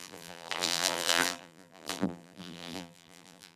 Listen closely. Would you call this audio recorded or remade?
remade